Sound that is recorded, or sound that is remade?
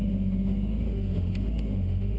remade